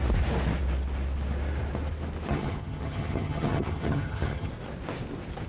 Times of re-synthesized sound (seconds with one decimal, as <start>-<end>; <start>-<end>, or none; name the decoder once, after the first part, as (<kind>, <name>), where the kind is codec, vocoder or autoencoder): 2.3-4.5 (vocoder, HiFi-GAN)